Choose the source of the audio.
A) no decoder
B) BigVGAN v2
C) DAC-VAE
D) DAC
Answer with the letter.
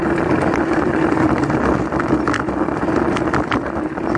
A